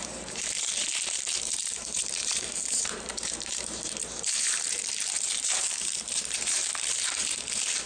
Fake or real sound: fake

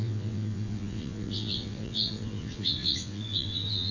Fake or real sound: fake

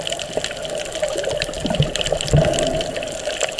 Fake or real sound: real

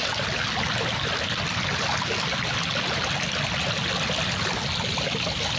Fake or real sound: real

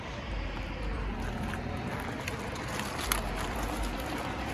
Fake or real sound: real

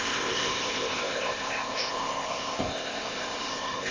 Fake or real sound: fake